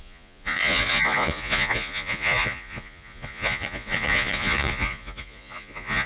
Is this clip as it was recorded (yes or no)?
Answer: no